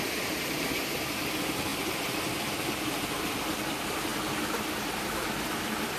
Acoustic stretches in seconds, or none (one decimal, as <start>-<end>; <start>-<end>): 1.7-3.2; 4.1-5.0